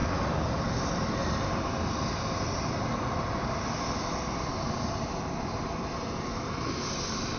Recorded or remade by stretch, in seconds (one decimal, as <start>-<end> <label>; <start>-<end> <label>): 0.0-7.4 recorded